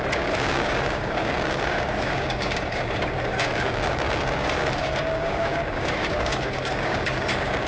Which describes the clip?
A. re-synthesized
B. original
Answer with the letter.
A